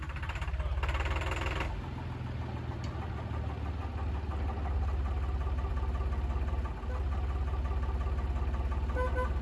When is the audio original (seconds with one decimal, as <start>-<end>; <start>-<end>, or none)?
0.0-9.4